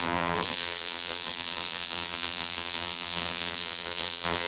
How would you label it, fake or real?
fake